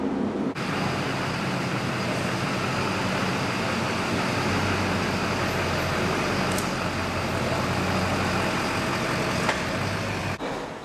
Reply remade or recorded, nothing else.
recorded